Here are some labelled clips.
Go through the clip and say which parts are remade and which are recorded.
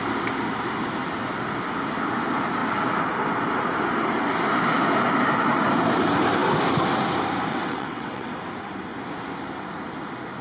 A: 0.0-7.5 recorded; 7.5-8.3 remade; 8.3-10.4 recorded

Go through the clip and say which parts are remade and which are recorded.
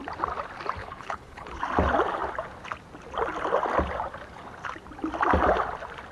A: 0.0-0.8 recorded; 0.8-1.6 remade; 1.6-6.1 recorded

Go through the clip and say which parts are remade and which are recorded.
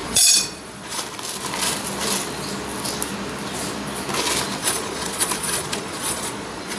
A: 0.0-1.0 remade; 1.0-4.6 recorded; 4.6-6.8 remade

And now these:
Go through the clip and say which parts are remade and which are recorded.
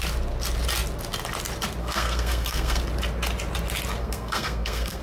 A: 0.0-1.8 recorded; 1.8-2.8 remade; 2.8-4.0 recorded; 4.0-5.0 remade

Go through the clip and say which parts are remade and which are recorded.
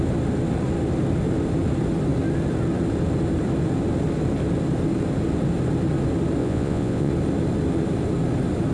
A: 0.0-6.4 recorded; 6.4-7.1 remade; 7.1-8.7 recorded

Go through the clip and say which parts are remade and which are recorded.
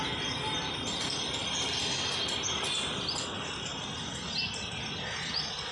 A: 0.0-5.7 recorded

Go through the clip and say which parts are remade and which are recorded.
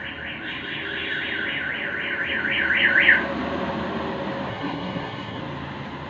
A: 0.0-4.5 recorded; 4.5-5.4 remade; 5.4-6.1 recorded